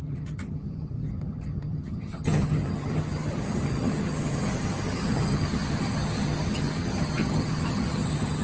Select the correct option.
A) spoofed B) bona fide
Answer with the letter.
A